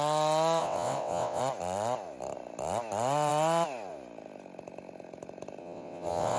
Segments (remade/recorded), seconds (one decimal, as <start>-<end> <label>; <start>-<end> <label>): 0.0-0.6 recorded; 0.6-1.4 remade; 1.4-5.6 recorded; 5.6-6.4 remade